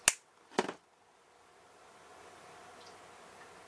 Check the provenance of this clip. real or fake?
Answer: real